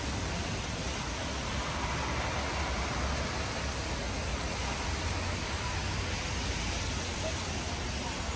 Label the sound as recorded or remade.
recorded